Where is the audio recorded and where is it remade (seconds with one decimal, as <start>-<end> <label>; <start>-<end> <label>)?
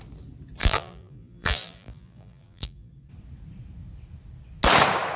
0.0-0.6 recorded; 0.6-2.9 remade; 2.9-5.2 recorded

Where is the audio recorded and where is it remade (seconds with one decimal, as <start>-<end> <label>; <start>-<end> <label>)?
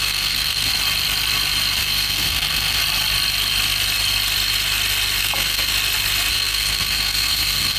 0.0-0.7 remade; 0.7-1.8 recorded; 1.8-2.8 remade; 2.8-5.2 recorded; 5.2-5.7 remade; 5.7-6.3 recorded; 6.3-7.8 remade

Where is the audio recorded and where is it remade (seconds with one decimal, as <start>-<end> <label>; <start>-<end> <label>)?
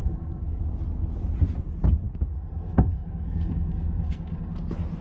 0.0-0.6 remade; 0.6-2.3 recorded; 2.3-4.5 remade; 4.5-5.0 recorded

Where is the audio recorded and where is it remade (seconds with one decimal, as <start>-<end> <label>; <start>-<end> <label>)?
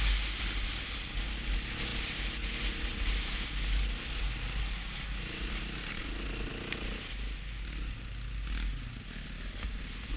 0.0-10.2 recorded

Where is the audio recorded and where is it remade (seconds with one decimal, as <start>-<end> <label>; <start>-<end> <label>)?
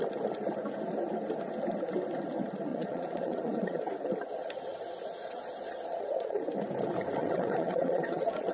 0.0-2.7 recorded; 2.7-3.9 remade; 3.9-5.2 recorded; 5.2-6.4 remade; 6.4-7.2 recorded; 7.2-8.5 remade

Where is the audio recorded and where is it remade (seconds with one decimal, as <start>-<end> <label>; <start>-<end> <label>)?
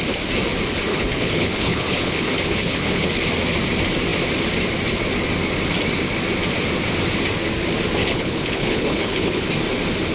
0.0-0.9 recorded; 0.9-3.2 remade; 3.2-8.0 recorded; 8.0-9.4 remade; 9.4-10.1 recorded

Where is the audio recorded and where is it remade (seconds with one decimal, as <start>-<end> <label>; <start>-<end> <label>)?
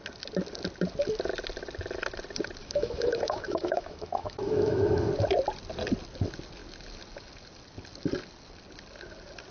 0.0-2.6 recorded; 2.6-5.1 remade; 5.1-9.5 recorded